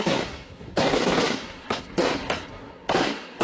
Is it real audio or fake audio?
fake